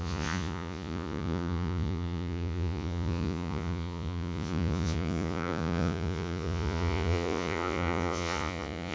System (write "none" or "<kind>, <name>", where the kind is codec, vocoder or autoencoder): vocoder, Vocos